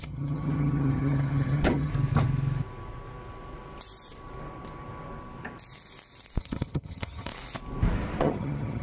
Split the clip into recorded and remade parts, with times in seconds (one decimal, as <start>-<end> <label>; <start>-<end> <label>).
0.0-1.9 remade; 1.9-6.4 recorded; 6.4-7.3 remade; 7.3-8.2 recorded; 8.2-8.8 remade

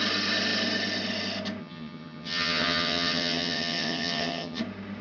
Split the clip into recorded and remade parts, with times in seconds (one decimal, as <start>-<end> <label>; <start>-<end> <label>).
0.0-1.6 recorded; 1.6-4.6 remade; 4.6-5.0 recorded

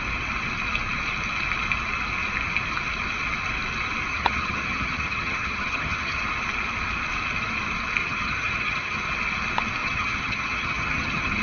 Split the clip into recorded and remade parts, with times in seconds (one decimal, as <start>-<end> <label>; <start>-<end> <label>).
0.0-4.1 recorded; 4.1-6.2 remade; 6.2-8.0 recorded; 8.0-9.1 remade; 9.1-9.8 recorded; 9.8-11.4 remade

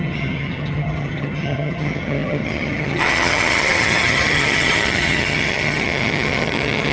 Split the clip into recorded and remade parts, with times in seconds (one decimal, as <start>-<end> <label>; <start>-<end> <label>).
0.0-6.9 remade